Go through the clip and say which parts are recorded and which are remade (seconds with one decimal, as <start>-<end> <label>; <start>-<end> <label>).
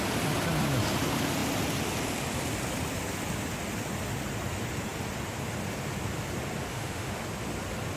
0.0-6.7 recorded; 6.7-7.2 remade; 7.2-8.0 recorded